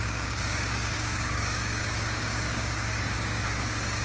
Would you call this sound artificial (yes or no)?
yes